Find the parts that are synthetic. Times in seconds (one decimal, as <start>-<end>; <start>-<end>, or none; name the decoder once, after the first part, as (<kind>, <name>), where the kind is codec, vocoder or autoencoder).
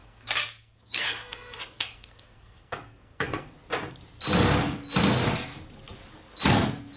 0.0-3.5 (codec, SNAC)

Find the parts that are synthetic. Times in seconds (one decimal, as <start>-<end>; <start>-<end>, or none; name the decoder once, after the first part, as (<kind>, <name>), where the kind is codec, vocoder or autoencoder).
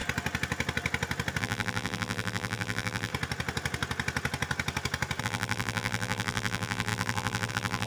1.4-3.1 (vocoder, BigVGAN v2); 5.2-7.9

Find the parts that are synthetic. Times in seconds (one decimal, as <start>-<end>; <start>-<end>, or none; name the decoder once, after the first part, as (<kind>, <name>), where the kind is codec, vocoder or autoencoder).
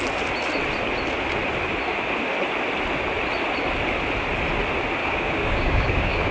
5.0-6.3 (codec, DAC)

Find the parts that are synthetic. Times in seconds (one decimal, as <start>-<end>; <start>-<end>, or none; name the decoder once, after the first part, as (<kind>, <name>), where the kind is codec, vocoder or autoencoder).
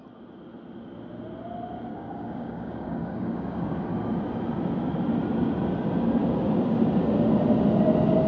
1.9-3.8 (codec, DAC)